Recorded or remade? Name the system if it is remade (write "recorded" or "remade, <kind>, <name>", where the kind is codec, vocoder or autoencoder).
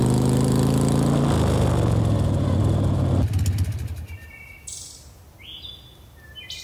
recorded